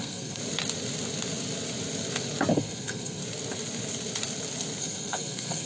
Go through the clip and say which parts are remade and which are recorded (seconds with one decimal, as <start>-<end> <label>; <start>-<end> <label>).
0.0-0.4 remade; 0.4-2.5 recorded; 2.5-3.2 remade; 3.2-4.8 recorded; 4.8-5.7 remade

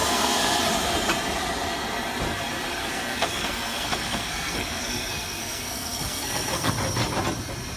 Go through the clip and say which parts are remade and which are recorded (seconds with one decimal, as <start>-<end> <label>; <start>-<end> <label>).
0.0-0.6 remade; 0.6-2.8 recorded; 2.8-6.7 remade; 6.7-7.8 recorded

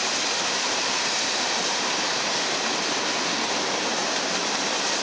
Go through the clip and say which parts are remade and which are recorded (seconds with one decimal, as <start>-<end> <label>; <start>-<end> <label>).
0.0-3.0 remade; 3.0-5.0 recorded

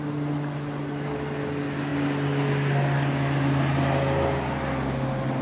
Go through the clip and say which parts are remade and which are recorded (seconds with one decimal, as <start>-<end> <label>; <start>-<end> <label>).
0.0-5.4 recorded

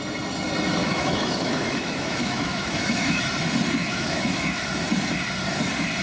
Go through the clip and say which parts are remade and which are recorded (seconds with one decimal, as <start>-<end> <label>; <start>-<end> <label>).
0.0-0.8 recorded; 0.8-3.2 remade; 3.2-3.8 recorded; 3.8-4.6 remade; 4.6-6.0 recorded